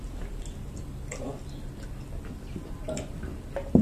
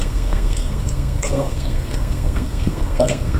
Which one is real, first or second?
first